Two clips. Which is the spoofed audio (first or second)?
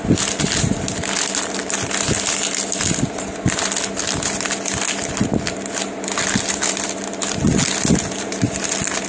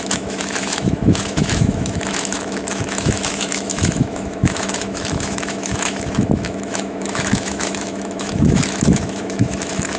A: second